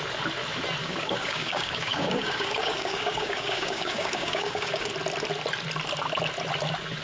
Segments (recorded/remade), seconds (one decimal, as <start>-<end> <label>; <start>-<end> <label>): 0.0-0.8 recorded; 0.8-4.9 remade; 4.9-7.0 recorded